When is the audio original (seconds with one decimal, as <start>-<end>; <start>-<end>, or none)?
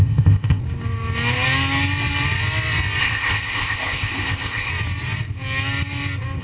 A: 0.6-3.0; 4.7-6.4